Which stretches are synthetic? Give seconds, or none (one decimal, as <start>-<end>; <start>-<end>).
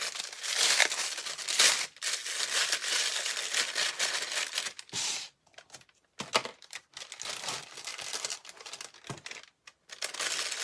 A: 2.6-3.6; 6.4-7.1